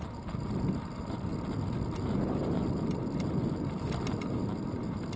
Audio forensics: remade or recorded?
recorded